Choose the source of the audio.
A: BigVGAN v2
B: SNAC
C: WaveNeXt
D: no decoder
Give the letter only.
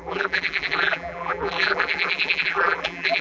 A